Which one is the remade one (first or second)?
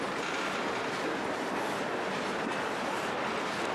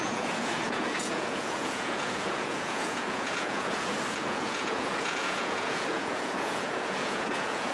second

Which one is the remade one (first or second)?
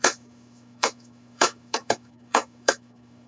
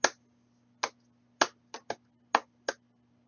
first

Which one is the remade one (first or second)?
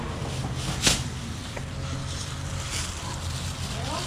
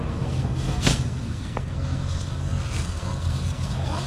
second